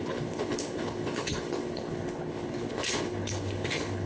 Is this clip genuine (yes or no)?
no